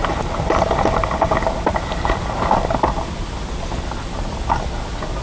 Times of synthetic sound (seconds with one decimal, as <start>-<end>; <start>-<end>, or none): none